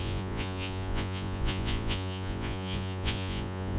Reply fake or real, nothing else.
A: fake